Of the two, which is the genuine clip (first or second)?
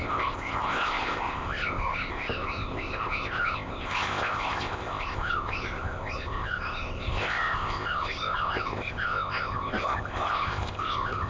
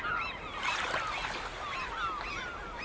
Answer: second